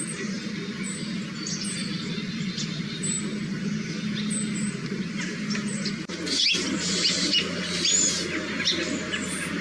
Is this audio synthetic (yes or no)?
no